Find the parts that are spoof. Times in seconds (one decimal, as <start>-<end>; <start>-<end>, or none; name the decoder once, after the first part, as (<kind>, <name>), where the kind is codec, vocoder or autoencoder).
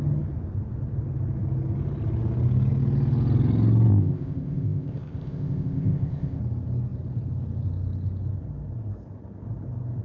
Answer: 3.9-6.4 (codec, ZipCodec)